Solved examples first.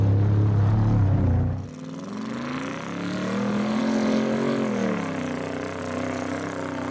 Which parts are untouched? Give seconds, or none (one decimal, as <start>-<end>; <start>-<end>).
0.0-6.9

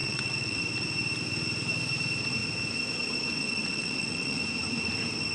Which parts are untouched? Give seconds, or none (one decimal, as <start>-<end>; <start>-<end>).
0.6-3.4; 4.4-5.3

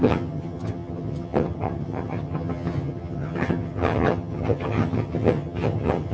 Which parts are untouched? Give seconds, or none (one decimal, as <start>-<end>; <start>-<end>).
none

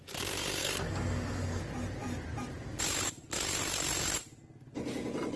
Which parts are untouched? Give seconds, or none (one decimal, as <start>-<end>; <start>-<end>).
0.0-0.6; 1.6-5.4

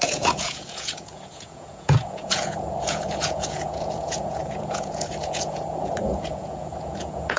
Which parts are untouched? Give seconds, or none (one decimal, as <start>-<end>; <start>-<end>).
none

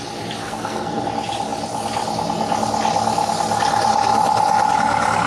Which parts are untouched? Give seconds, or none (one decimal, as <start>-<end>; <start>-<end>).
0.0-0.4; 1.0-5.3

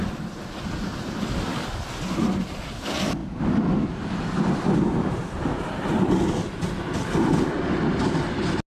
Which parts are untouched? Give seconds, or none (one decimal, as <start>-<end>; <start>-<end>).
0.0-8.8

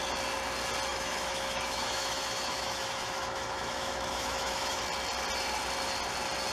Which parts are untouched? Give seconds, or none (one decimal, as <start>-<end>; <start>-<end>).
0.0-0.9; 4.8-6.5